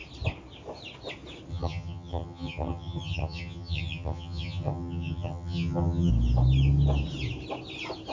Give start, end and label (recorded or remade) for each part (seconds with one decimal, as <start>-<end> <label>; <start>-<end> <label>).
0.0-1.5 recorded; 1.5-6.1 remade; 6.1-8.1 recorded